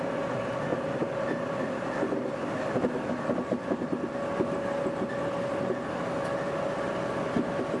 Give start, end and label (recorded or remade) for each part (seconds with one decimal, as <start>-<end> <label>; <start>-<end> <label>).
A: 0.0-7.8 recorded